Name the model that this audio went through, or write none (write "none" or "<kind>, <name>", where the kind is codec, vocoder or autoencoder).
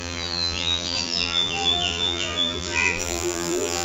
vocoder, BigVGAN v2